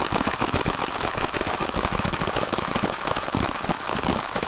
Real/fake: fake